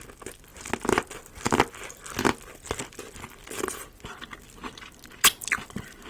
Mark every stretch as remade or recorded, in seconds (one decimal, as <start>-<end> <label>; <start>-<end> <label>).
0.0-6.1 recorded